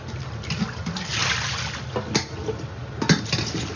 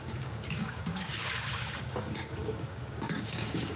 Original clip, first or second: first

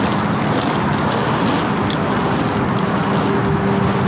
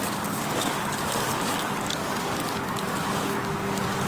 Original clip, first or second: first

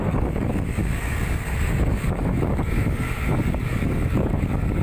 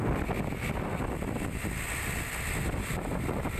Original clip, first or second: second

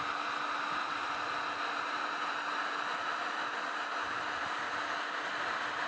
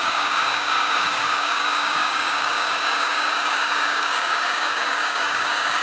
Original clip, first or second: first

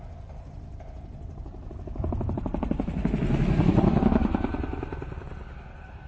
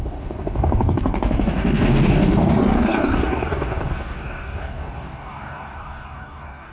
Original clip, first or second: first